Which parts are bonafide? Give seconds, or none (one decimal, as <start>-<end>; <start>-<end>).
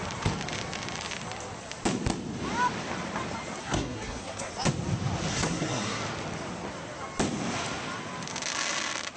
0.0-3.6; 4.5-5.3; 6.0-9.2